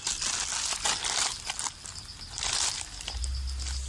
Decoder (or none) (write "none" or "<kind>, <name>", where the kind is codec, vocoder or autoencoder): none